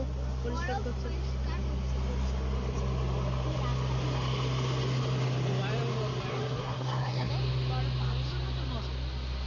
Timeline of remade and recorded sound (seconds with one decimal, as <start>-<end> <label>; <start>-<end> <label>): 0.0-6.3 recorded; 6.3-7.3 remade; 7.3-9.5 recorded